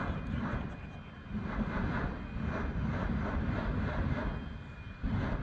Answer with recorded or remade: recorded